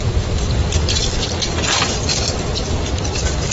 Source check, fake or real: fake